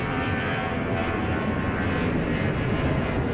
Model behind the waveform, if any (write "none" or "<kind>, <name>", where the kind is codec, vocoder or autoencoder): vocoder, BigVGAN v2